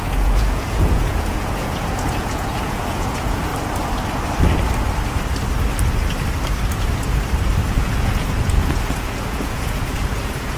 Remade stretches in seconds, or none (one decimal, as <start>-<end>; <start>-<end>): 0.0-3.5; 7.7-10.6